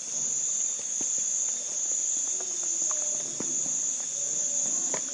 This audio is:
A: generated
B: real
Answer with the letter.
B